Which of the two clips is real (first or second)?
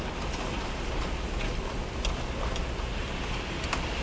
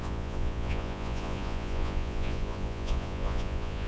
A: first